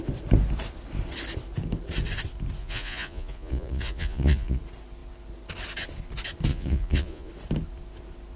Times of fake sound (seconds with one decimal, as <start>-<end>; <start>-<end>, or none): 2.6-4.6; 6.5-7.3